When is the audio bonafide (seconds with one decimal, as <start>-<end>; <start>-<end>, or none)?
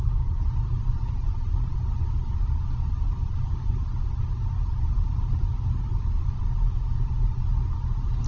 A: 0.0-8.3